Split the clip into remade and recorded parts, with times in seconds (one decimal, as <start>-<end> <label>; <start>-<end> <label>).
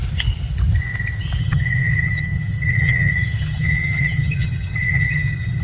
0.0-1.4 recorded; 1.4-5.6 remade